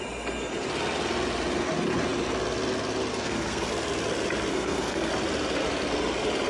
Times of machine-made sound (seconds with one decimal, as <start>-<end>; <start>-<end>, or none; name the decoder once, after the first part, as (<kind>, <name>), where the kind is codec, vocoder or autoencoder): 3.1-3.7 (codec, SNAC); 4.5-5.1